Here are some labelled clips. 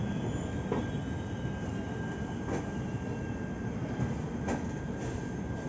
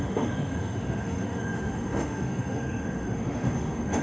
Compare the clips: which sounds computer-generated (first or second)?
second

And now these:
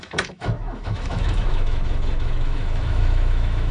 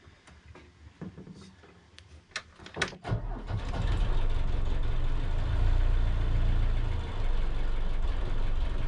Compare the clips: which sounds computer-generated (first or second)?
first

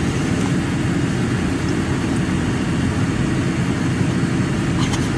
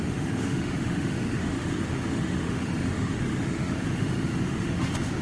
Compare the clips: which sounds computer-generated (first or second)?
second